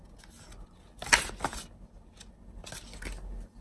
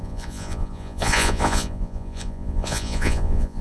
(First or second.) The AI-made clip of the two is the second